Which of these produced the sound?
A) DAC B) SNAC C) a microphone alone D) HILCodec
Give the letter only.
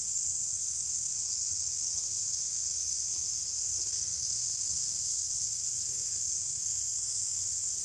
B